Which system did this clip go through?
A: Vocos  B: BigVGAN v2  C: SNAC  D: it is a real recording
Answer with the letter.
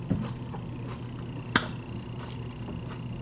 D